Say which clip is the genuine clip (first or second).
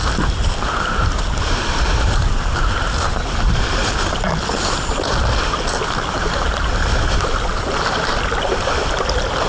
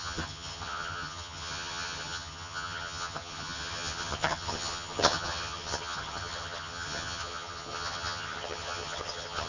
first